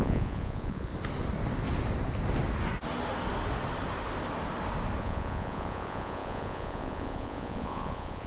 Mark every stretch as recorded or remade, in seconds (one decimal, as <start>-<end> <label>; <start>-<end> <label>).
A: 0.0-0.9 remade; 0.9-5.0 recorded; 5.0-8.3 remade

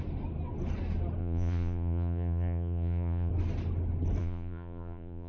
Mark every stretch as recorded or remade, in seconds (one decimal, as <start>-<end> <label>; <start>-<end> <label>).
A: 0.0-1.2 recorded; 1.2-3.3 remade; 3.3-4.2 recorded; 4.2-5.3 remade

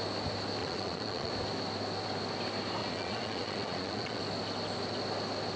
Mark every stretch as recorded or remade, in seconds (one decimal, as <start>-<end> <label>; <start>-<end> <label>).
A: 0.0-0.6 recorded; 0.6-1.3 remade; 1.3-2.8 recorded; 2.8-4.2 remade; 4.2-5.6 recorded

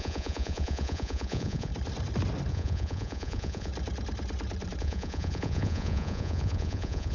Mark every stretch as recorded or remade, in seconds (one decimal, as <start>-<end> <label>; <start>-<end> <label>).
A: 0.0-1.7 remade; 1.7-2.5 recorded; 2.5-3.7 remade; 3.7-4.8 recorded; 4.8-7.1 remade

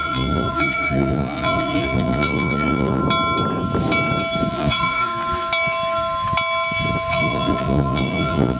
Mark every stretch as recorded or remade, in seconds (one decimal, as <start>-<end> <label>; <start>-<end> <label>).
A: 0.0-3.0 remade; 3.0-4.5 recorded; 4.5-5.1 remade; 5.1-7.1 recorded; 7.1-8.6 remade

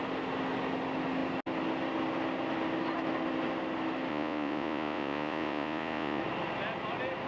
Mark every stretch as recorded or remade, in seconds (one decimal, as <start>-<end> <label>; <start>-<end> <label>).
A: 0.0-4.1 recorded; 4.1-6.2 remade; 6.2-7.3 recorded